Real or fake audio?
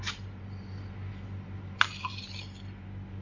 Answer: real